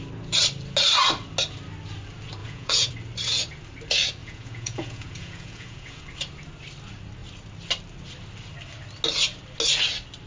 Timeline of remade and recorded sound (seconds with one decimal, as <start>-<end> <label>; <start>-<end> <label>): 0.0-2.4 recorded; 2.4-2.9 remade; 2.9-4.2 recorded; 4.2-6.0 remade; 6.0-10.3 recorded